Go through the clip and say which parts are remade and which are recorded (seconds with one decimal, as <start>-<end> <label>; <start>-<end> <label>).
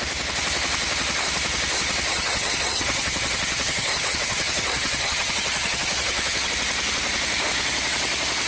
0.0-2.1 recorded; 2.1-6.5 remade; 6.5-8.5 recorded